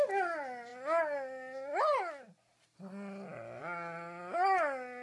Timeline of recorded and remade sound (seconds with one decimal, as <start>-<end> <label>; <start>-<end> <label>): 0.0-5.0 recorded